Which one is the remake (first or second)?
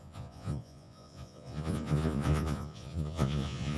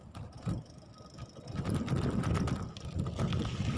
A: first